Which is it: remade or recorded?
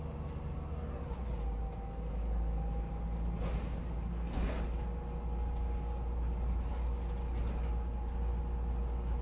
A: recorded